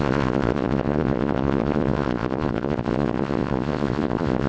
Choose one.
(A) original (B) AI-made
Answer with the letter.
B